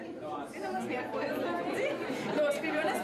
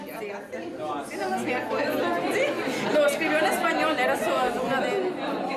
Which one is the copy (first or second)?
first